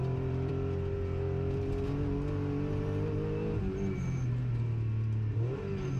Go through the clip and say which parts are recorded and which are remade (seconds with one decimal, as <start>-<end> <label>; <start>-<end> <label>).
0.0-0.5 remade; 0.5-6.0 recorded